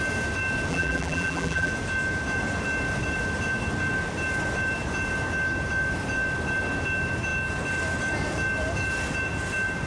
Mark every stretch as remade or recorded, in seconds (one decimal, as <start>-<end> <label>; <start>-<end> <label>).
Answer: 0.0-0.7 recorded; 0.7-1.7 remade; 1.7-9.9 recorded